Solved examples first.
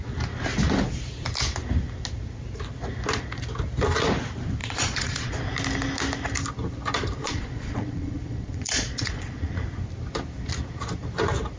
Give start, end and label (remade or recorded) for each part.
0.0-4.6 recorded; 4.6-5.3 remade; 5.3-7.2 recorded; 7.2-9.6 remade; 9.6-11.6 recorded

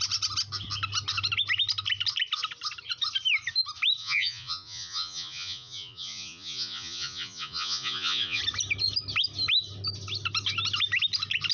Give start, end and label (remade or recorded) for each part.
0.0-4.0 recorded; 4.0-8.4 remade; 8.4-11.5 recorded

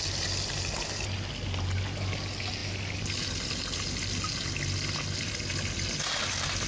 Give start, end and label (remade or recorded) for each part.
0.0-6.7 recorded

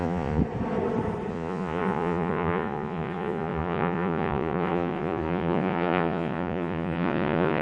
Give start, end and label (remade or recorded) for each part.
0.0-0.4 remade; 0.4-1.3 recorded; 1.3-7.6 remade

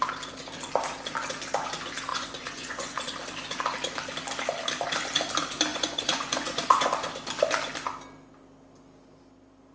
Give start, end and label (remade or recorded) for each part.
0.0-2.1 recorded; 2.1-3.0 remade; 3.0-5.7 recorded; 5.7-6.9 remade; 6.9-9.7 recorded

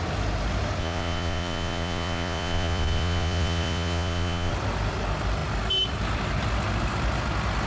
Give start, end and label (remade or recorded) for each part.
0.0-0.8 recorded; 0.8-4.5 remade; 4.5-7.7 recorded

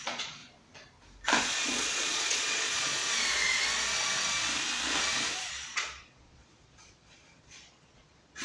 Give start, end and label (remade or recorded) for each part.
0.0-0.4 remade; 0.4-1.4 recorded; 1.4-3.0 remade; 3.0-5.4 recorded; 5.4-8.4 remade

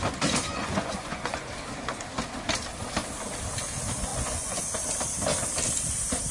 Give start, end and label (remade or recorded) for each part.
0.0-0.5 recorded; 0.5-1.5 remade; 1.5-4.1 recorded; 4.1-4.6 remade; 4.6-6.3 recorded